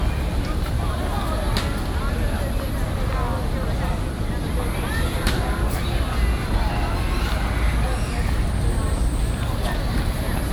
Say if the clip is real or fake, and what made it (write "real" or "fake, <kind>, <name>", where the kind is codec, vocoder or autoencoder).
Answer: real